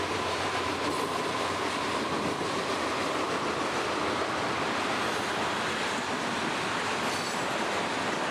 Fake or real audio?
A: real